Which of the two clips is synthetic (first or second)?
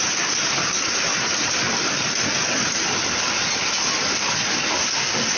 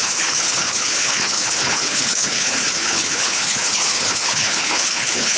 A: second